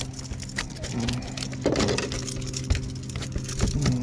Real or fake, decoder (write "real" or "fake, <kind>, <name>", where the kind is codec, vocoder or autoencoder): real